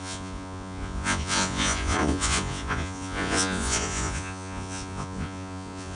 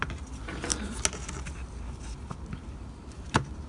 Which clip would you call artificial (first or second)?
first